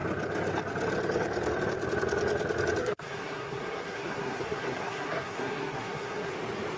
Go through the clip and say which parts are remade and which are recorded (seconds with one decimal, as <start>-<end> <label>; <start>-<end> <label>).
0.0-2.8 recorded; 2.8-6.3 remade; 6.3-6.8 recorded